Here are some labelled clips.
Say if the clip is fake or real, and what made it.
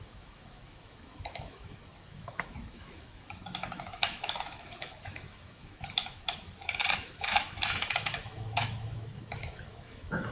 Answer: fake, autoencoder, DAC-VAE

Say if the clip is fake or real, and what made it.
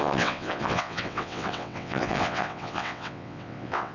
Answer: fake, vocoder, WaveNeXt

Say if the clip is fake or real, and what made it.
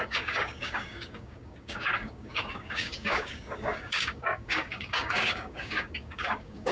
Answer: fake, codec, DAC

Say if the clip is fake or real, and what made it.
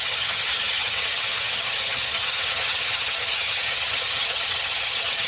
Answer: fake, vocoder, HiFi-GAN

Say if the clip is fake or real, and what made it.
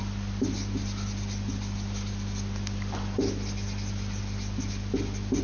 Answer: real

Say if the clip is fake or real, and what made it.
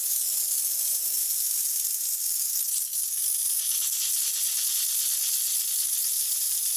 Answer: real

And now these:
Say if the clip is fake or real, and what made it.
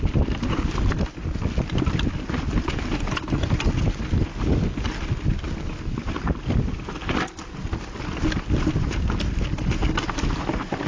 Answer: real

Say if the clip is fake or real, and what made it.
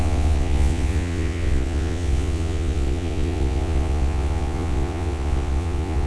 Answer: fake, vocoder, Vocos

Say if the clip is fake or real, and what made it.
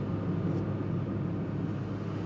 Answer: real